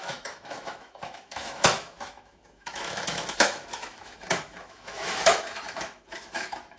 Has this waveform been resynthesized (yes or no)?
yes